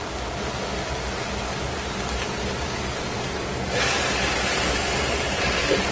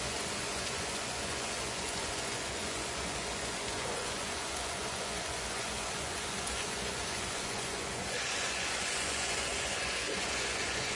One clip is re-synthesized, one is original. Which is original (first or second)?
first